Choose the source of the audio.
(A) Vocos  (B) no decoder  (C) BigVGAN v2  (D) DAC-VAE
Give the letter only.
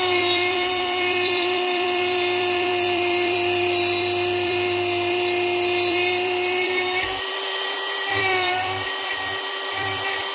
C